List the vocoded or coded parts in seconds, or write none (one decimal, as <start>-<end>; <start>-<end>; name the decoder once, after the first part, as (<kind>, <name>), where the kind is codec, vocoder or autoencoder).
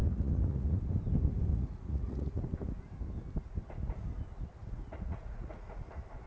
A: 0.0-0.8 (vocoder, Vocos); 1.5-2.4; 4.6-5.8